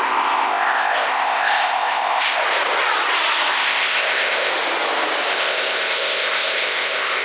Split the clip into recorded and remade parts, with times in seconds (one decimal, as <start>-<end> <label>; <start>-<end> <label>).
0.0-2.4 remade; 2.4-3.5 recorded; 3.5-4.5 remade; 4.5-5.3 recorded; 5.3-7.2 remade